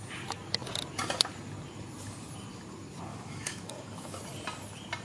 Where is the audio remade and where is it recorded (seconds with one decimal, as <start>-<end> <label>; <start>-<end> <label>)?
0.0-3.1 recorded; 3.1-4.2 remade; 4.2-5.0 recorded